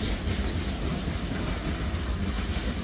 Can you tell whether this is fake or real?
real